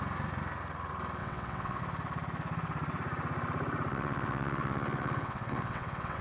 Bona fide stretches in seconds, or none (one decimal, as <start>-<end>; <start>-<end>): 0.0-1.2; 1.8-3.9